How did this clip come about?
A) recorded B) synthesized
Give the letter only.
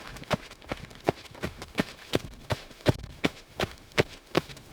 B